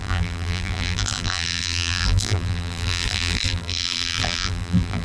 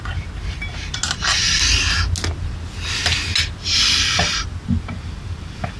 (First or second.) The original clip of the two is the second